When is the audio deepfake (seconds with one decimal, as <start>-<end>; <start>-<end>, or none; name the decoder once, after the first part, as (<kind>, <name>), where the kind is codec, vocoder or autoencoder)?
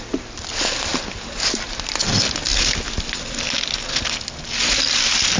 none